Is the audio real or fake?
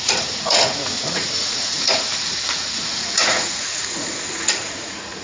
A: fake